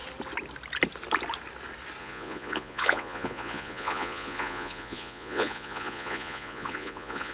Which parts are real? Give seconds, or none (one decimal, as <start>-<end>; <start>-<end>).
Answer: 0.0-2.0